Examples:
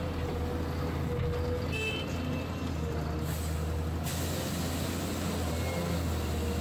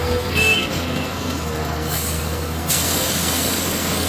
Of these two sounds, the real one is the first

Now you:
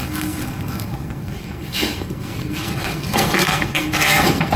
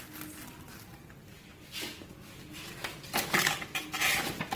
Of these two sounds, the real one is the second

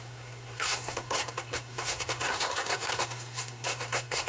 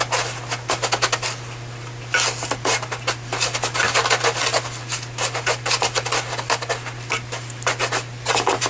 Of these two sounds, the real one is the second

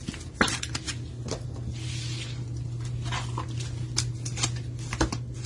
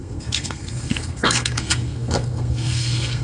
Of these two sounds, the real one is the first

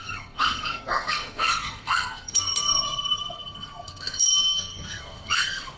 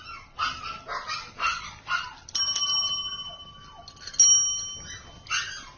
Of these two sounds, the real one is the second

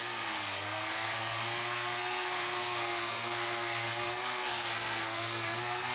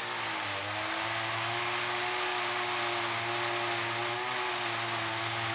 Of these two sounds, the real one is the second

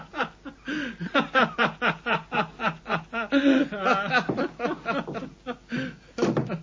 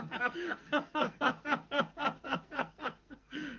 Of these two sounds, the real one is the first